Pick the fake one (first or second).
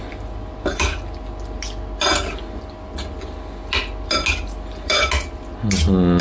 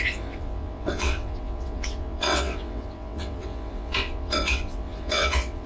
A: second